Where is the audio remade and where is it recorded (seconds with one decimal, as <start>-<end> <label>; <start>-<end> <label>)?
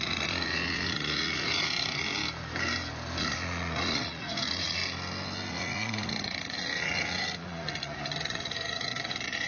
0.0-2.1 remade; 2.1-3.2 recorded; 3.2-4.8 remade; 4.8-5.5 recorded; 5.5-9.5 remade